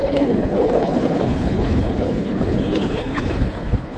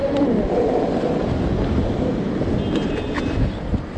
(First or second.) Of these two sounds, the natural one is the second